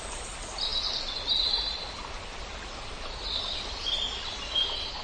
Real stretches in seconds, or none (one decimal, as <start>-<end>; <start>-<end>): 0.0-5.0